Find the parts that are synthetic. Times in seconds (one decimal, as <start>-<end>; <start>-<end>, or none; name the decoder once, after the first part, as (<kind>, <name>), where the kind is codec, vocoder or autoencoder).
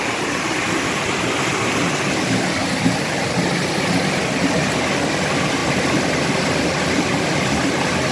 none